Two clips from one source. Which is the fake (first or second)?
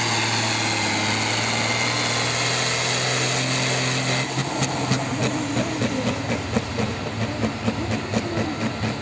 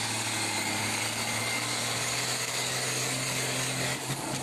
second